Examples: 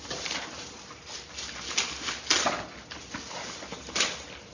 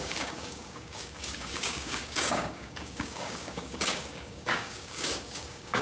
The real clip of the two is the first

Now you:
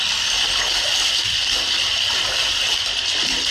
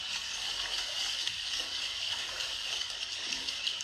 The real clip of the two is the first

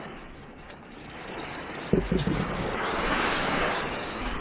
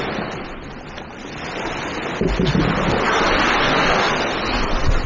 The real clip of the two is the second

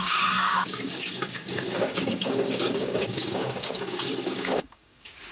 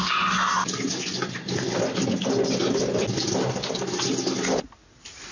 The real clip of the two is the second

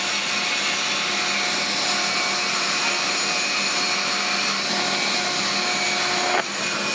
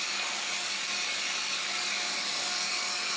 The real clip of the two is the first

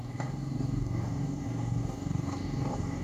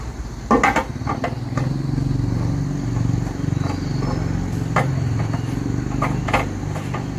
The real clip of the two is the second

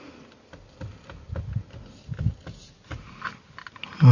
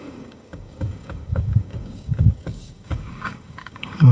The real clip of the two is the first